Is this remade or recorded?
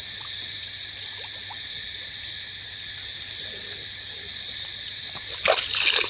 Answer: recorded